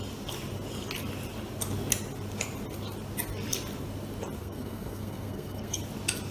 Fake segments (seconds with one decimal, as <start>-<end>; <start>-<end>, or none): 4.4-5.8